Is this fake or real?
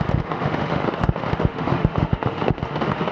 fake